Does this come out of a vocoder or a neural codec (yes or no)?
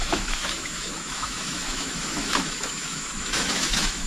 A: yes